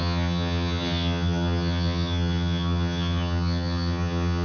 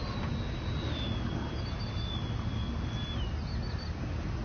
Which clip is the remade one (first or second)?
first